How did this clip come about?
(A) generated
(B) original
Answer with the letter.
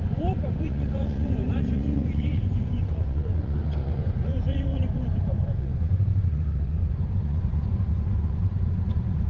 A